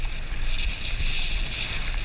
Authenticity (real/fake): real